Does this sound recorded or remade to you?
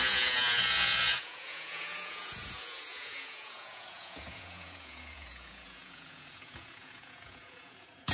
remade